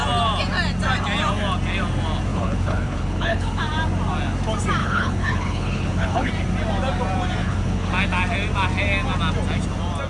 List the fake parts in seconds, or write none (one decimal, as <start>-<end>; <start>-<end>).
2.3-3.6; 4.8-6.3; 7.4-7.9